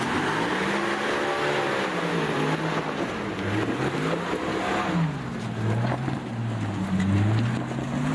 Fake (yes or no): no